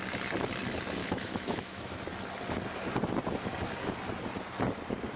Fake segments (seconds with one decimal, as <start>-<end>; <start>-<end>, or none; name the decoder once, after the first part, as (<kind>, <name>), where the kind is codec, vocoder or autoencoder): 1.0-2.0 (autoencoder, DAC-VAE)